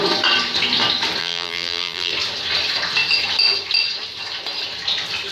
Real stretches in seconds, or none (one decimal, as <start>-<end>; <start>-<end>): 0.0-1.2; 2.1-5.3